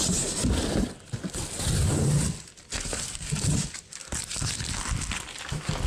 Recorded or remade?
recorded